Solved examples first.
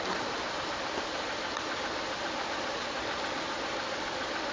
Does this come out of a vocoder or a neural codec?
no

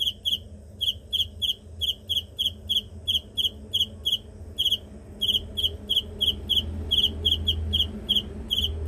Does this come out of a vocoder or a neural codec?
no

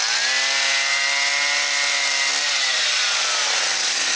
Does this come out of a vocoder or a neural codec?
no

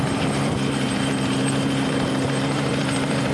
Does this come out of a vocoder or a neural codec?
yes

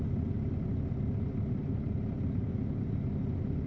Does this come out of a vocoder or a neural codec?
no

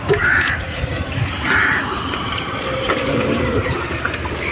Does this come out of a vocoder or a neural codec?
yes